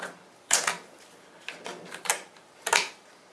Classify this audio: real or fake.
real